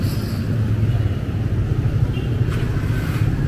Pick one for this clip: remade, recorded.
recorded